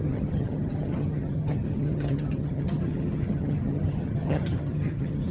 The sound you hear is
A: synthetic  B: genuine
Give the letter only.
A